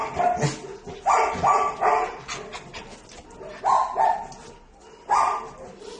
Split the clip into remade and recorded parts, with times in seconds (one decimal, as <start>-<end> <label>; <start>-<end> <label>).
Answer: 0.0-6.0 recorded